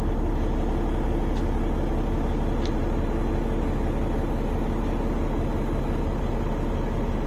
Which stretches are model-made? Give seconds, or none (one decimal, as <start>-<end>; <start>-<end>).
none